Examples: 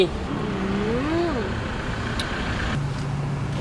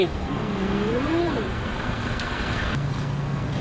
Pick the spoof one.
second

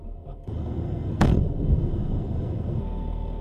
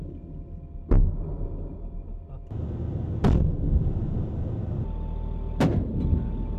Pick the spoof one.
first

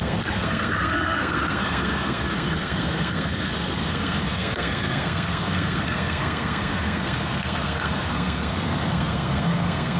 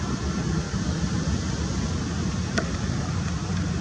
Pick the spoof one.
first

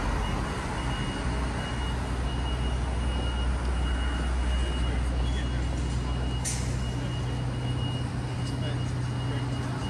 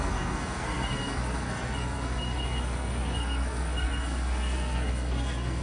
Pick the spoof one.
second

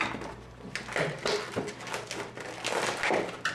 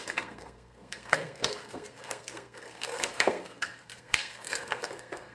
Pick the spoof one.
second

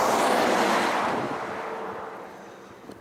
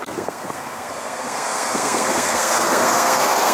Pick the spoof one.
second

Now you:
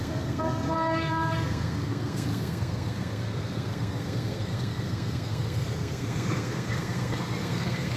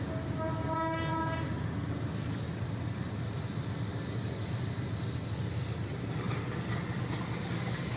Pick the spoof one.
first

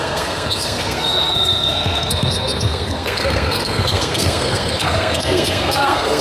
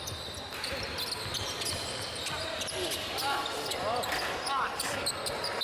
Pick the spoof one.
first